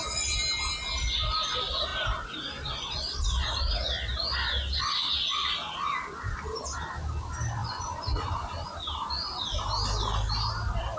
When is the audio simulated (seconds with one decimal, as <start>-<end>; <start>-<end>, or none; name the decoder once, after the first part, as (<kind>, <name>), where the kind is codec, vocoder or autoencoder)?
none